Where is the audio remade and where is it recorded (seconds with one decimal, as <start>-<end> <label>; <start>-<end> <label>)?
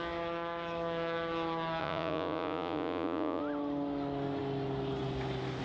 0.0-1.8 recorded; 1.8-3.4 remade; 3.4-5.6 recorded